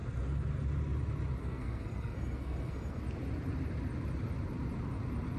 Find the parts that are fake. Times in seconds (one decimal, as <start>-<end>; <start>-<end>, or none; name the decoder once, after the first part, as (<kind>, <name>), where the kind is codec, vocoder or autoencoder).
1.4-3.0 (codec, SNAC)